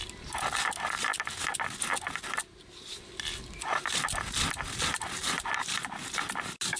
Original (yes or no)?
yes